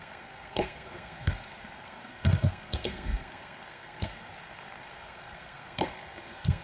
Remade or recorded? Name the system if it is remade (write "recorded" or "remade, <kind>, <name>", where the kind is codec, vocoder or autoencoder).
remade, codec, SNAC